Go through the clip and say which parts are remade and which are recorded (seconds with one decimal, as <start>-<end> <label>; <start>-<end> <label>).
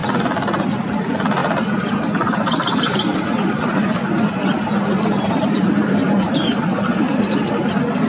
0.0-8.1 recorded